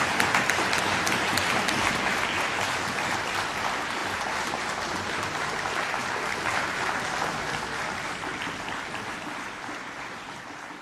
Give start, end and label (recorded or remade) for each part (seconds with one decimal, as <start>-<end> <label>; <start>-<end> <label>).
0.0-1.4 remade; 1.4-3.5 recorded; 3.5-6.0 remade; 6.0-9.8 recorded; 9.8-10.8 remade